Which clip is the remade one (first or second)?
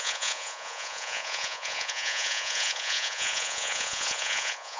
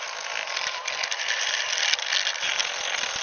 first